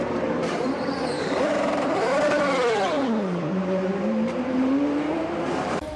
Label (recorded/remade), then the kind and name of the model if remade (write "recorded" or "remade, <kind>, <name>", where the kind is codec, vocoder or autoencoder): remade, vocoder, BigVGAN v2